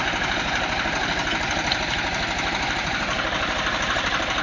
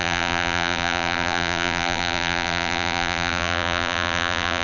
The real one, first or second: first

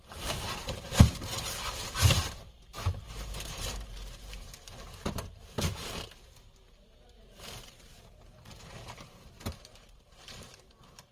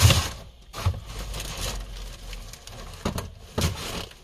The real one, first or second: second